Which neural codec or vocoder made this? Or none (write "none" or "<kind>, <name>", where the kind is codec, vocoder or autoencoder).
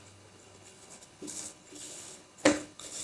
codec, HILCodec